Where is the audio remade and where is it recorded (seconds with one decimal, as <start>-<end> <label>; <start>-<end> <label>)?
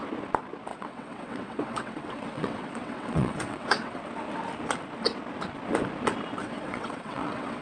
0.0-0.7 recorded; 0.7-4.0 remade; 4.0-6.4 recorded; 6.4-7.6 remade